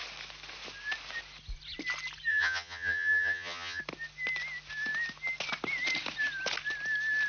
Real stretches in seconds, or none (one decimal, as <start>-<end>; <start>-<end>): 0.0-2.3; 3.8-7.3